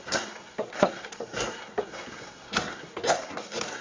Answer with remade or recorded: remade